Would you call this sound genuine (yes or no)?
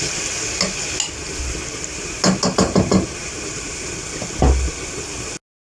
yes